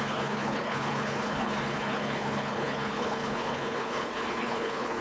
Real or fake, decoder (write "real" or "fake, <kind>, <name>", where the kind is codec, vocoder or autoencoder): fake, codec, HILCodec